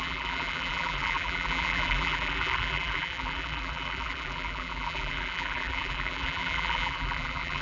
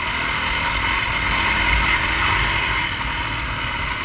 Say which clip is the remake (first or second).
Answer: first